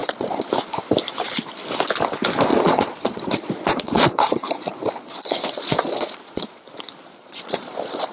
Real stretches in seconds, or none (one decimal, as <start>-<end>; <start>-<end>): 0.5-2.5; 6.6-7.2